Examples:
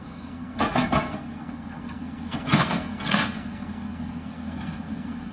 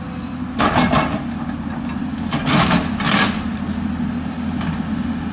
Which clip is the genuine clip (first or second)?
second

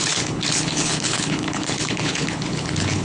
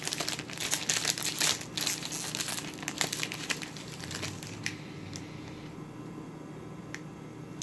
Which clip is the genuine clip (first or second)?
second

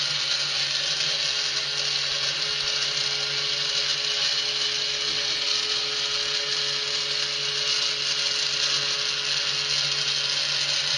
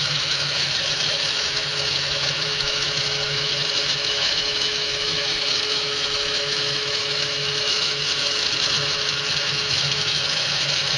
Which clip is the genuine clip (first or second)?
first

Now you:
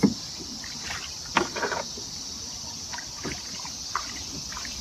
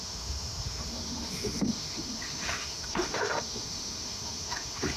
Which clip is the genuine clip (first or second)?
first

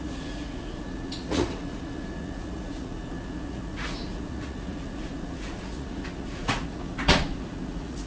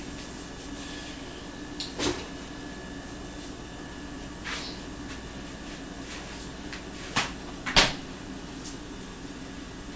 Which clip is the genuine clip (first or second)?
second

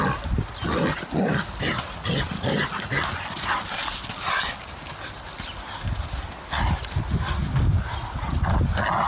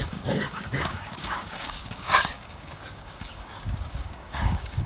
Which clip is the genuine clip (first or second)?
first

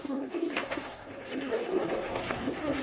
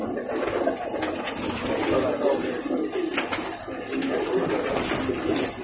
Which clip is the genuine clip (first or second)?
second